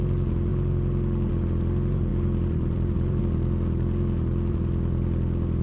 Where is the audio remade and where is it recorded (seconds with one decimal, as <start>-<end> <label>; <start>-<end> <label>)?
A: 0.0-2.1 recorded; 2.1-3.2 remade; 3.2-5.6 recorded